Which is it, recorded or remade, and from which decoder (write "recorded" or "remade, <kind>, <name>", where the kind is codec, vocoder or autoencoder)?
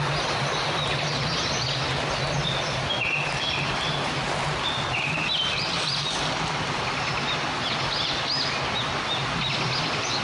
recorded